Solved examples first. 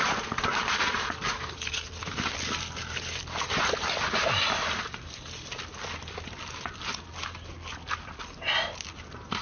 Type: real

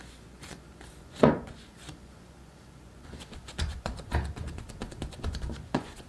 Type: fake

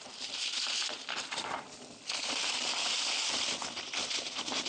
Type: real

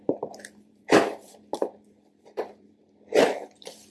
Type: fake